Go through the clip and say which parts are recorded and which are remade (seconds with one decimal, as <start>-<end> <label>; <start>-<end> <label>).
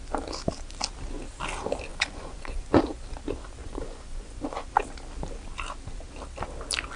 0.0-1.9 recorded; 1.9-2.8 remade; 2.8-3.6 recorded; 3.6-4.7 remade; 4.7-7.0 recorded